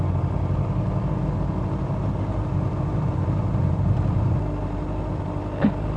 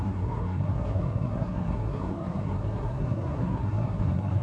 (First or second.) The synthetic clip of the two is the second